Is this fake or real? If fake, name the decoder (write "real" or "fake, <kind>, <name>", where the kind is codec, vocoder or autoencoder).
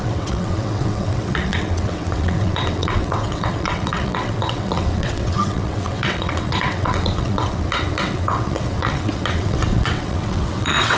fake, vocoder, WaveNeXt